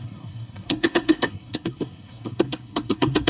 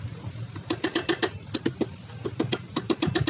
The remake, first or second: first